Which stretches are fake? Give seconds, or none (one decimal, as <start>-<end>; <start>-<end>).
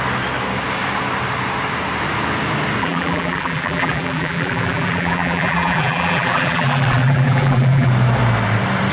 2.8-7.9